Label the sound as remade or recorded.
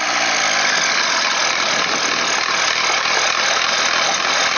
recorded